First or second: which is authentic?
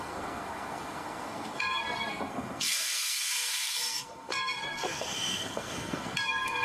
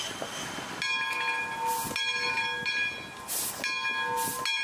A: second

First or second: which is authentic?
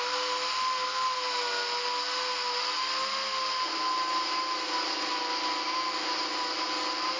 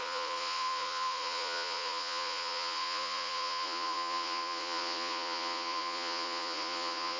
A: first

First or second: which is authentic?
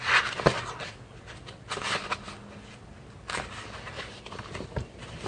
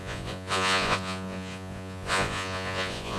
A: first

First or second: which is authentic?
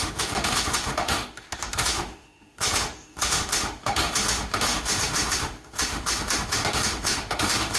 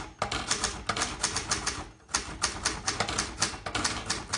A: second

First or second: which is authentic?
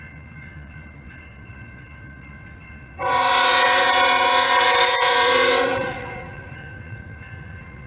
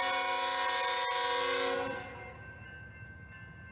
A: second